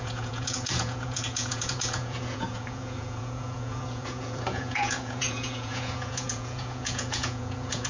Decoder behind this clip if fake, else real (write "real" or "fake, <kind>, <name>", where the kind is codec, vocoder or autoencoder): fake, vocoder, Vocos